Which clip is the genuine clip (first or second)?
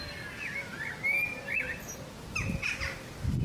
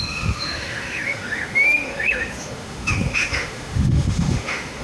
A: first